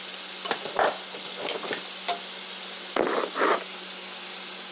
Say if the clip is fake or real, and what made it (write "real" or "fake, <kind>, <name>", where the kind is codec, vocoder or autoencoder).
real